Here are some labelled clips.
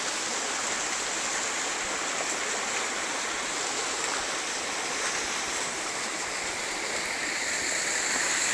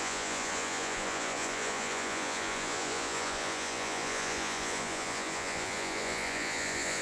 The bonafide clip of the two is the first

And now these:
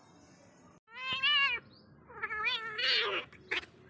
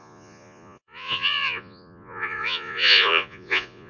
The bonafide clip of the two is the first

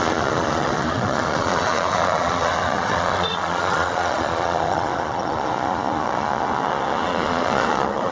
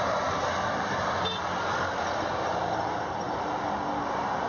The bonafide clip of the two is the second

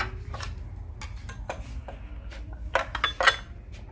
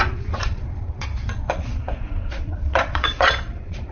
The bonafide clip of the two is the first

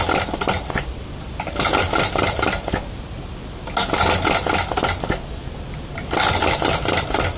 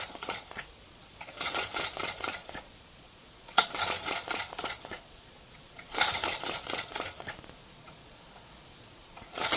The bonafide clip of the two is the first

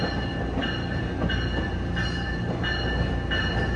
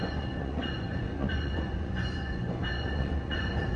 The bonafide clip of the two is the first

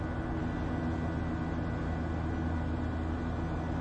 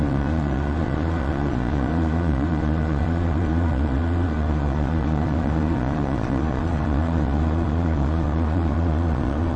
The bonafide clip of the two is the first